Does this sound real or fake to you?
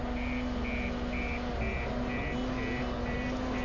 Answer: real